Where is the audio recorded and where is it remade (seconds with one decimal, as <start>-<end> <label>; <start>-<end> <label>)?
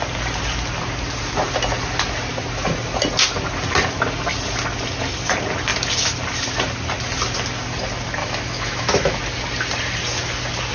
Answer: 0.0-8.2 recorded; 8.2-9.2 remade; 9.2-10.7 recorded